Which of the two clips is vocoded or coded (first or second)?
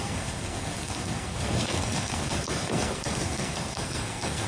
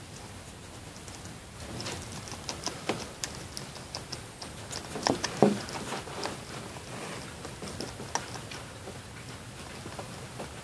first